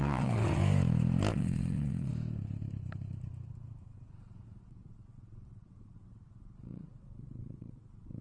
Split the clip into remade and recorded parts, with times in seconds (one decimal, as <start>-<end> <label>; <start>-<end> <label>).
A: 0.0-0.6 remade; 0.6-1.3 recorded; 1.3-2.1 remade; 2.1-3.8 recorded; 3.8-8.2 remade